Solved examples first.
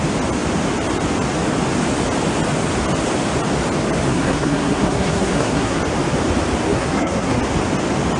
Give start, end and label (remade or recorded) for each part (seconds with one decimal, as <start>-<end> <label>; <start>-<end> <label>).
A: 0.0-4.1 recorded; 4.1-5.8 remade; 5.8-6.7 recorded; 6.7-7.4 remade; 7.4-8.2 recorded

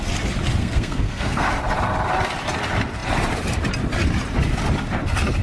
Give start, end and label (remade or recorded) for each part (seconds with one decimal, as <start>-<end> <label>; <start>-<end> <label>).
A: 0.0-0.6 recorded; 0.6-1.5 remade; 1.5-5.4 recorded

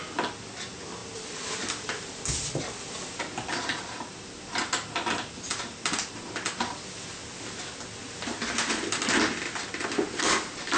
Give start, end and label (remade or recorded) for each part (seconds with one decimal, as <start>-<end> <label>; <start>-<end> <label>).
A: 0.0-10.8 recorded

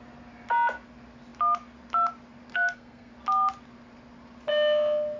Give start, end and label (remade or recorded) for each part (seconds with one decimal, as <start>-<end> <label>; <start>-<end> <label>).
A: 0.0-2.5 recorded; 2.5-3.1 remade; 3.1-5.2 recorded